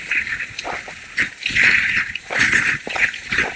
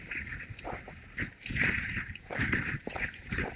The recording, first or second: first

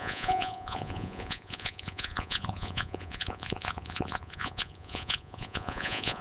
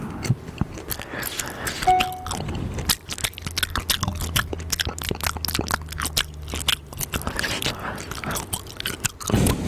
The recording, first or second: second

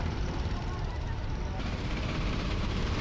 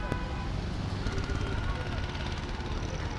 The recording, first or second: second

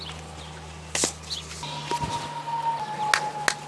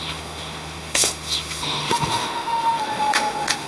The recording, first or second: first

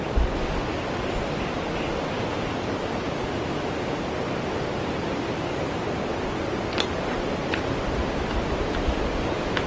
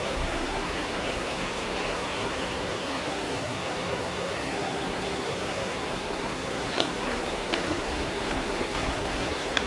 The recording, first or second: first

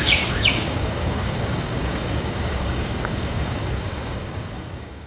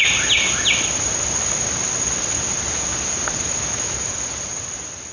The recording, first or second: second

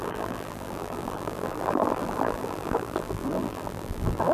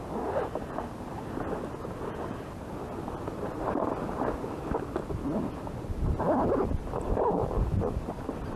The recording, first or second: second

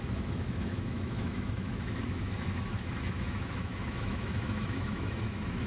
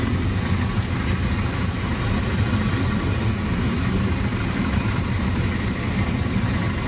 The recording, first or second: second